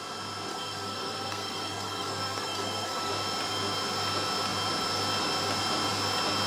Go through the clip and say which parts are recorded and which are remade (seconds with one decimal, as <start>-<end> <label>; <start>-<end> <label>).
0.0-0.5 recorded; 0.5-3.1 remade; 3.1-6.5 recorded